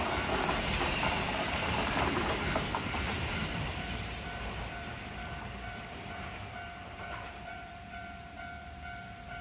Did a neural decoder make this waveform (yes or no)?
yes